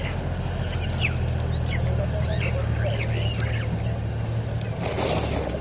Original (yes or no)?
yes